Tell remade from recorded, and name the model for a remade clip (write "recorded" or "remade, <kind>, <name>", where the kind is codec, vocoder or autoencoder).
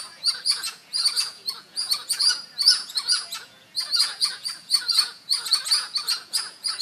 remade, vocoder, Vocos